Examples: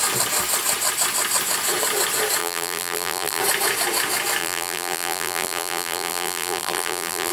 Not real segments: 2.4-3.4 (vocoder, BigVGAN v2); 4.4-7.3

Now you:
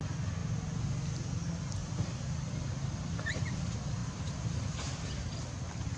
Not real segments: 1.8-3.6 (vocoder, BigVGAN v2)